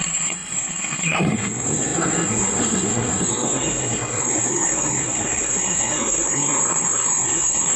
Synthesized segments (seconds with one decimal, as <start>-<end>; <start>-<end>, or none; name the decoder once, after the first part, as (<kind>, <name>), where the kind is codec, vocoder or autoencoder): 0.0-7.8 (codec, SNAC)